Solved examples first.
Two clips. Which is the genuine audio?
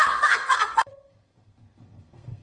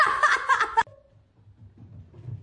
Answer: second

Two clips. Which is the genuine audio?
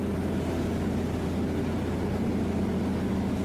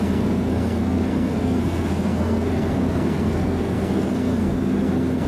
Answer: first